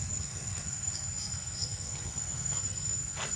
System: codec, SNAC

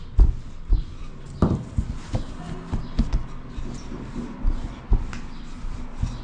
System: none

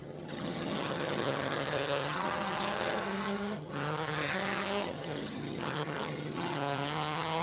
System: vocoder, HiFi-GAN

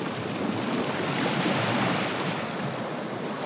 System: none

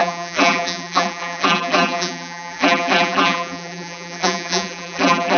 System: vocoder, BigVGAN v2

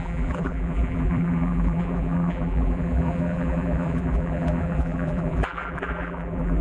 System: vocoder, BigVGAN v2